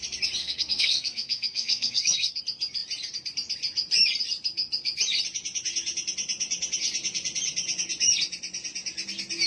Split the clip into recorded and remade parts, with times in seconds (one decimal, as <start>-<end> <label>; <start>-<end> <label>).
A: 0.0-0.4 recorded; 0.4-2.4 remade; 2.4-9.5 recorded